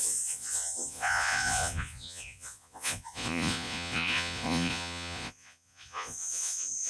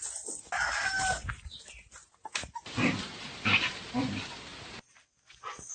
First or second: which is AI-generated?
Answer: first